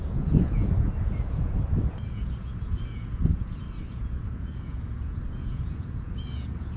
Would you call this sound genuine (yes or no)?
no